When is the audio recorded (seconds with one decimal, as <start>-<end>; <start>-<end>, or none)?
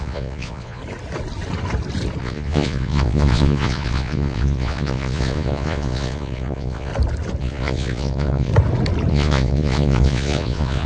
0.8-2.2; 6.9-7.4; 8.5-9.1